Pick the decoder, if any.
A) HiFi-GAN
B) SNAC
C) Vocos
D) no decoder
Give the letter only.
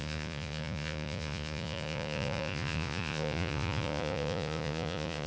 C